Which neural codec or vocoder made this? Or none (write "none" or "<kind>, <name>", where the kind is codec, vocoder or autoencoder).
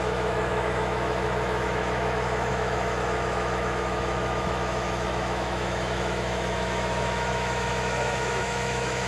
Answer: autoencoder, DAC-VAE